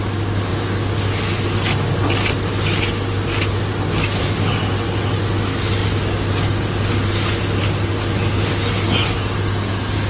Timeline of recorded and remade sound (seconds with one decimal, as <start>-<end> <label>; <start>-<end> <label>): 0.0-10.1 recorded